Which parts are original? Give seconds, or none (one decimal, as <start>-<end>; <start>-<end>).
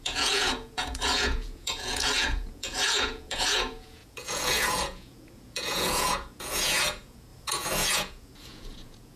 none